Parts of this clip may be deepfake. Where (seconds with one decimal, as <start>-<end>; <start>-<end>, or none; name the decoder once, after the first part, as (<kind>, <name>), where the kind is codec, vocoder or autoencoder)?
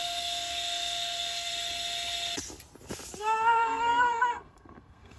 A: 0.0-1.5 (codec, SNAC); 3.2-5.2